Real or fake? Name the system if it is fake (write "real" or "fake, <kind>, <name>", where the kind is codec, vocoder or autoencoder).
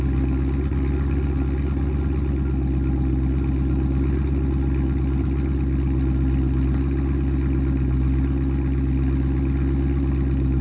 real